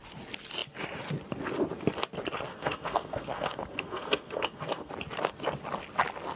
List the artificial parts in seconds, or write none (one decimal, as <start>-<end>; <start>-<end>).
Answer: 2.5-4.9